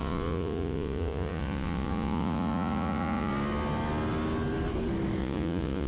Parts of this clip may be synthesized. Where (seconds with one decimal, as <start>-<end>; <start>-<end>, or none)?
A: 0.0-3.3; 5.2-5.9